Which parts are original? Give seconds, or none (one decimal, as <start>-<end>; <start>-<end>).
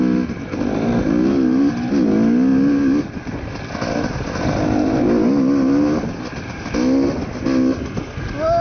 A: 0.0-8.6